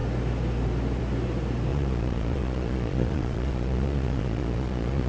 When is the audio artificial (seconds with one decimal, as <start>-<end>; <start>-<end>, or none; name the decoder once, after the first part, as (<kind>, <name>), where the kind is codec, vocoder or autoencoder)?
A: 1.7-5.1 (vocoder, Vocos)